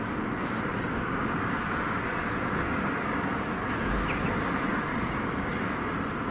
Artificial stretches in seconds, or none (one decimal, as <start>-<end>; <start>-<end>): 0.4-3.9; 4.7-5.5